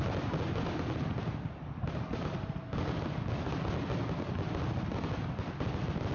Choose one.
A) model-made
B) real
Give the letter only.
B